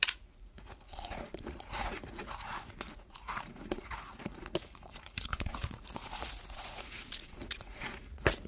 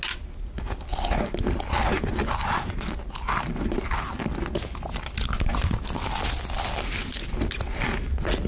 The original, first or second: second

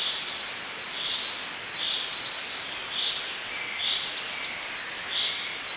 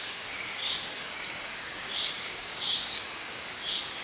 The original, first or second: first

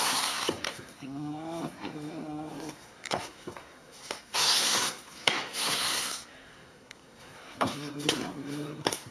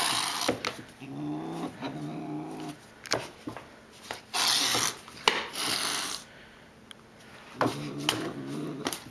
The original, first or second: second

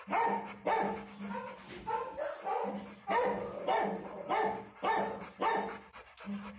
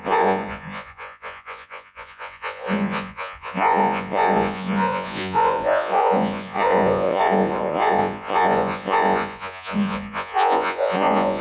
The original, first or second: first